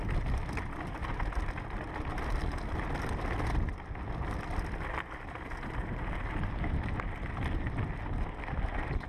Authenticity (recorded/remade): recorded